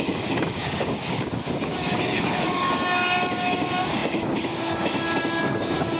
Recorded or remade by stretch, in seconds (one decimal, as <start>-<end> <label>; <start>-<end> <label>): 0.0-6.0 remade